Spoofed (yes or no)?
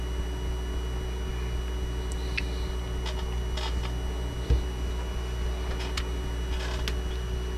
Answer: no